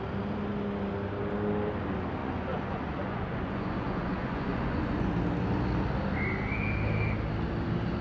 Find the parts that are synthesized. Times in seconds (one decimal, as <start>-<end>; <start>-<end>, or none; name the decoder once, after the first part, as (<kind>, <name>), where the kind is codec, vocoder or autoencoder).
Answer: 2.2-5.1 (vocoder, Vocos)